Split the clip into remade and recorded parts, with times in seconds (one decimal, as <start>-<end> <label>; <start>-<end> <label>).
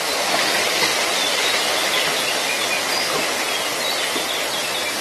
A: 0.0-5.0 recorded